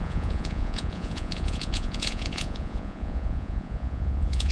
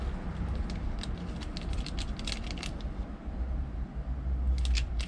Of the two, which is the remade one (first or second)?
first